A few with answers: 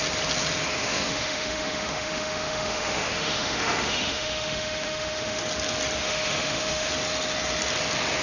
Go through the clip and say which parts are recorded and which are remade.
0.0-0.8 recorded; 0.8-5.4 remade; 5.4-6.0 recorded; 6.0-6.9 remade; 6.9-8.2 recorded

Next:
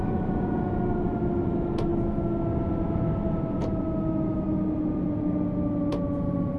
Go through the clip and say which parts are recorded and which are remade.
0.0-6.6 recorded